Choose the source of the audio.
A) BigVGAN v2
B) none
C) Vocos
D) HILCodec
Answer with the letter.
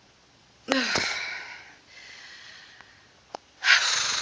C